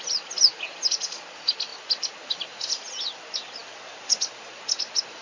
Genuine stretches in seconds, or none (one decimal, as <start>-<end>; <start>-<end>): 0.0-5.2